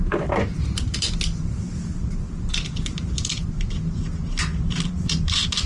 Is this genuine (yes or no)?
yes